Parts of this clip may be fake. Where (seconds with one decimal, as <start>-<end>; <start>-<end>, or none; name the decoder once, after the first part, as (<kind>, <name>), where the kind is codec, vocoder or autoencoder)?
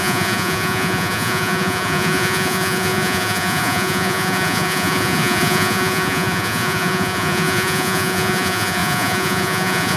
0.0-10.0 (vocoder, Vocos)